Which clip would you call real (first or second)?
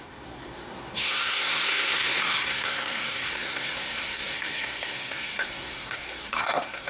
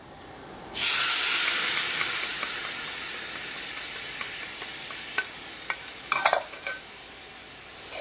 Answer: second